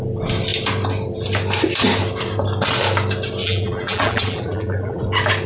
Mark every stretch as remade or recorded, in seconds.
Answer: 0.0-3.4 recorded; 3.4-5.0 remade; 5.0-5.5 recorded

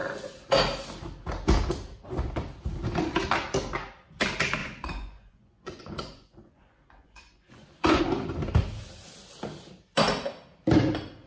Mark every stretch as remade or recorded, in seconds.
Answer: 0.0-4.6 recorded; 4.6-8.0 remade; 8.0-11.3 recorded

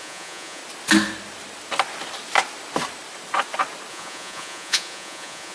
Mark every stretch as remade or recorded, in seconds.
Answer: 0.0-0.6 remade; 0.6-3.9 recorded; 3.9-5.5 remade